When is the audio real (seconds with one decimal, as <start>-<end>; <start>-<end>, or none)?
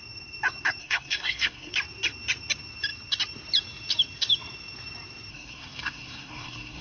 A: 0.0-0.8; 1.7-5.3